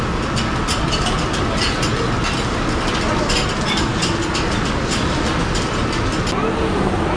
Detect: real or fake real